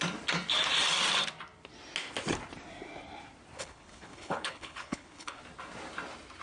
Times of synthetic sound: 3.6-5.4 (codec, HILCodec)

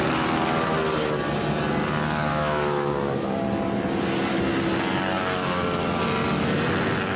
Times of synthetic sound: 2.3-3.4 (autoencoder, DAC-VAE)

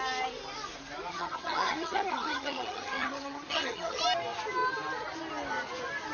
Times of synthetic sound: 1.1-4.0 (vocoder, HiFi-GAN)

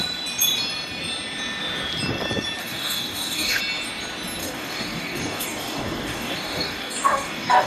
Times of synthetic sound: 2.6-3.6 (codec, DAC); 4.4-7.7

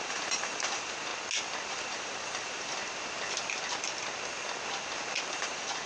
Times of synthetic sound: 0.0-1.1 (vocoder, BigVGAN v2); 1.7-2.8; 5.3-5.9

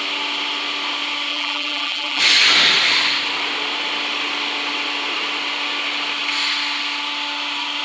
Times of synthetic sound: 1.3-2.2 (vocoder, BigVGAN v2)